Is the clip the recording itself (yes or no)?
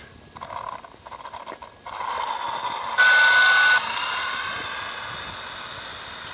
yes